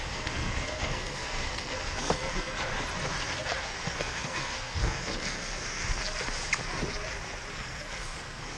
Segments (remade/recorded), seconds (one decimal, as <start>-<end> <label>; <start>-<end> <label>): 0.0-2.7 remade; 2.7-3.6 recorded; 3.6-5.8 remade; 5.8-7.5 recorded; 7.5-8.6 remade